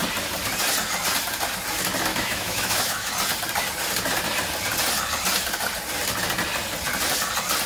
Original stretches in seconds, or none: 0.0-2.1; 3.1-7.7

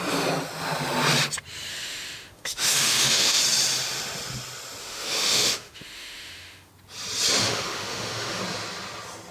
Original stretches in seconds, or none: 0.0-1.7; 3.4-4.8; 6.7-7.4; 8.4-9.3

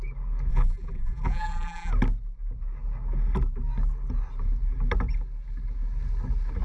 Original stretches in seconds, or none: 0.0-0.5; 1.9-6.6

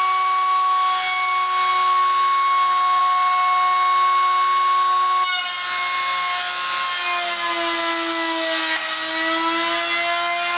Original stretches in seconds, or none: 0.0-10.6

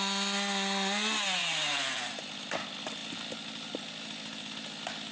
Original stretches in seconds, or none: 0.0-5.1

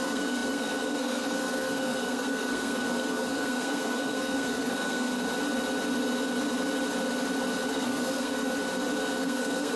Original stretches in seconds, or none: 5.1-7.7; 8.4-9.2